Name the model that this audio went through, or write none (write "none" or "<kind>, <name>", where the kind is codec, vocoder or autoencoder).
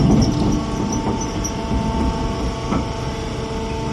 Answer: none